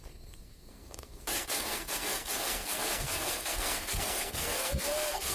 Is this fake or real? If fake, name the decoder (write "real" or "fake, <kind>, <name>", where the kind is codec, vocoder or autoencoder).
fake, codec, SNAC